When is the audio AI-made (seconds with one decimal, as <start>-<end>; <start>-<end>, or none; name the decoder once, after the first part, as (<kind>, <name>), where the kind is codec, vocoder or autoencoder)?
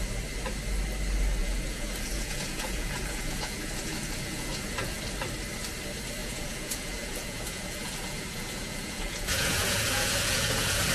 1.4-5.0 (vocoder, Vocos); 6.2-10.9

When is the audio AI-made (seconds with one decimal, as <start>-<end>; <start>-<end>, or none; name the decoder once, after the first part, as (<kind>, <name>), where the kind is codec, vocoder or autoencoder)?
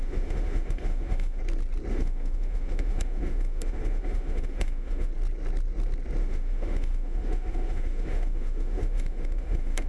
0.0-1.4 (autoencoder, DAC-VAE); 1.9-5.1; 6.2-9.9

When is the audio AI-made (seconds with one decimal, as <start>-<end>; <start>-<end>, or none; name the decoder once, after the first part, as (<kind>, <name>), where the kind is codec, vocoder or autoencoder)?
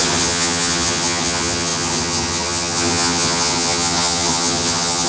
0.0-5.1 (vocoder, HiFi-GAN)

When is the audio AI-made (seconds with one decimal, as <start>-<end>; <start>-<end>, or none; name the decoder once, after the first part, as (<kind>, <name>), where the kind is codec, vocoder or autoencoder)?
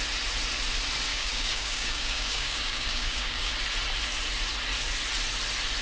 1.1-3.5 (codec, DAC)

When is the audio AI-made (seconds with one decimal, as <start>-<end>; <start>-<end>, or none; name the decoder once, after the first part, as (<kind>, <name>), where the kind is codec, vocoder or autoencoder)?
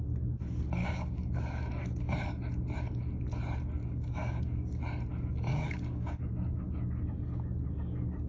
0.8-1.7 (codec, DAC); 3.8-4.8; 5.5-6.3